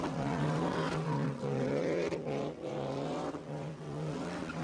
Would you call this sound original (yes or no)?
no